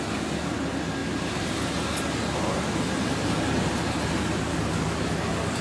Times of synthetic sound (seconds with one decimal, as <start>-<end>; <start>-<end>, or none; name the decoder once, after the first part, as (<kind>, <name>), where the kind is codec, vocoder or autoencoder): 4.5-5.6 (codec, DAC)